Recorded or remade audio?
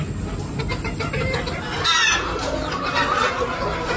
recorded